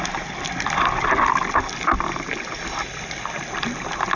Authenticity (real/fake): real